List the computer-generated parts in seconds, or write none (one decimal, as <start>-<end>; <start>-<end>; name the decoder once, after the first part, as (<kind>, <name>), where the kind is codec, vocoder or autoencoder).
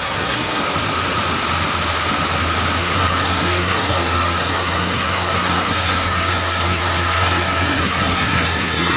0.0-0.6 (codec, SNAC); 2.8-9.0